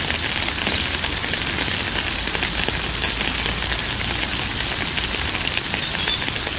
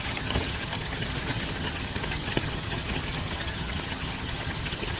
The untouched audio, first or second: first